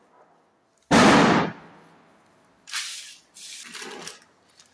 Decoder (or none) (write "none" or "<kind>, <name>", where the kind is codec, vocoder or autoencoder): none